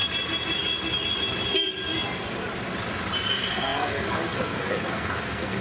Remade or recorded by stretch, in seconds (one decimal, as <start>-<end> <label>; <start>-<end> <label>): 0.0-3.3 recorded; 3.3-5.6 remade